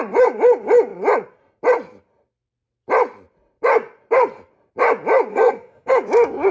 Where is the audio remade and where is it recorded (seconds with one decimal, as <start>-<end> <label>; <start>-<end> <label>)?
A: 0.0-5.3 recorded; 5.3-5.9 remade; 5.9-6.5 recorded